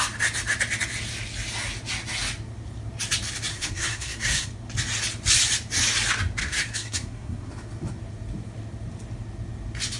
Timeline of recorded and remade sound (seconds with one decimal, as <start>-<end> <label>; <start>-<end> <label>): 0.0-3.5 recorded; 3.5-4.5 remade; 4.5-6.4 recorded; 6.4-7.5 remade; 7.5-10.0 recorded